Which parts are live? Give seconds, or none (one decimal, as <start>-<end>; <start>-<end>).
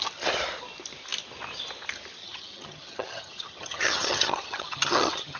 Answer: 0.0-2.2